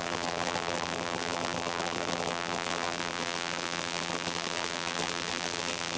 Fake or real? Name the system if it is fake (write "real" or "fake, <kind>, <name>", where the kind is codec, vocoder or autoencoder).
fake, vocoder, BigVGAN v2